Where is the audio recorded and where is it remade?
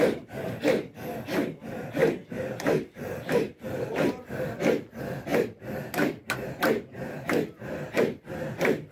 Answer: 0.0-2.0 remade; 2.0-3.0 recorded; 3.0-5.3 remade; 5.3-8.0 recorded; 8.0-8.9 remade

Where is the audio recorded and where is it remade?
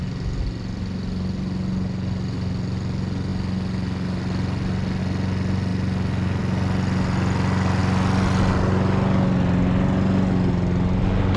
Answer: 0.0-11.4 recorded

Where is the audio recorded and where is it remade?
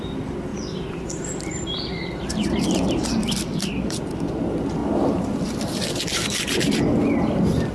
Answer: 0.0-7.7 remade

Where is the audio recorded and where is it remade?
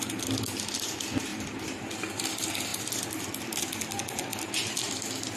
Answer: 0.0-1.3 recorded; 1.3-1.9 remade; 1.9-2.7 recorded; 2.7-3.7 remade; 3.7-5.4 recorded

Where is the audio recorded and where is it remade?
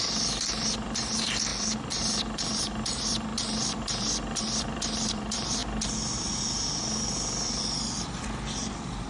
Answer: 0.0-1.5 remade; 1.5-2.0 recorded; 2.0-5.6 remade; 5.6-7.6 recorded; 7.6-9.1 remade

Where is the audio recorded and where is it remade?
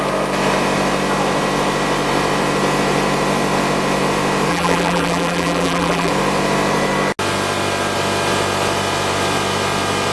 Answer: 0.0-4.5 recorded; 4.5-6.1 remade; 6.1-10.1 recorded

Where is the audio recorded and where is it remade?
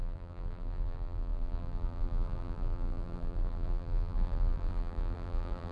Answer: 0.0-5.7 remade